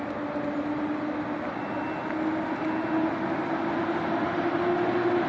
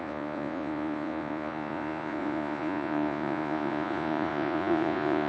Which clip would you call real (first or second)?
first